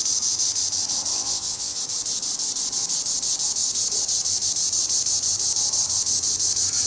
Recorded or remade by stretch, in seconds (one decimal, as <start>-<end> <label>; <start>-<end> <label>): 0.0-1.1 recorded; 1.1-1.8 remade; 1.8-6.9 recorded